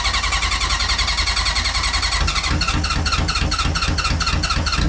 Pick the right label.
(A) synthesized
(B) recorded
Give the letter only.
B